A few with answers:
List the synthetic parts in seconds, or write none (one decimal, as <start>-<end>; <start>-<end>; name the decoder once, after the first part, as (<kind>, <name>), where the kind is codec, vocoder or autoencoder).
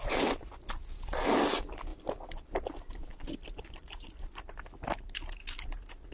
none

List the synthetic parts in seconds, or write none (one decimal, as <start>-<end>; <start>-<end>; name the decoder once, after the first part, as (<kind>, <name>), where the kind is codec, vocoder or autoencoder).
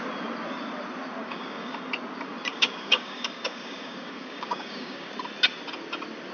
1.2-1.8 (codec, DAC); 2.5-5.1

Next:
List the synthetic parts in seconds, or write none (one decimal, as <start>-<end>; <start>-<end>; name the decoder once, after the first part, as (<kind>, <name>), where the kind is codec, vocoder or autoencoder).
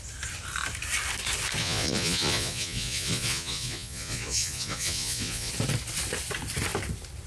1.6-5.5 (vocoder, Vocos)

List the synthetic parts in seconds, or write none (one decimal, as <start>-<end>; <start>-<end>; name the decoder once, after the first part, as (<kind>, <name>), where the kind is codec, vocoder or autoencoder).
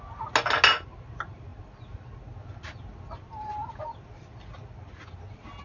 none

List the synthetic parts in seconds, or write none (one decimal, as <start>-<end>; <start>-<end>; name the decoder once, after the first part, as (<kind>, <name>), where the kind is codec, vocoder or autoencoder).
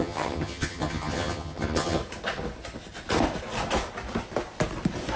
0.0-2.0 (vocoder, HiFi-GAN)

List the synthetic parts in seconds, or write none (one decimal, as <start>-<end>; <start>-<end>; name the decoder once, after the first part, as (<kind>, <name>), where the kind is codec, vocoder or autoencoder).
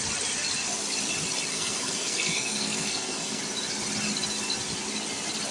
1.5-3.4 (codec, SNAC)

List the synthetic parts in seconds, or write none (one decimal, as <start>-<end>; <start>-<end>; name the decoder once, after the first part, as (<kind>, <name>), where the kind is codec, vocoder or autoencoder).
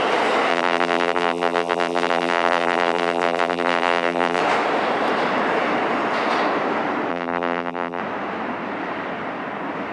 0.5-4.4 (vocoder, BigVGAN v2); 7.1-8.0